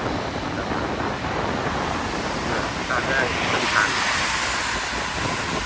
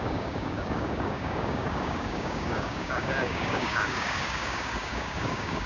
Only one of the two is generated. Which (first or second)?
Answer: second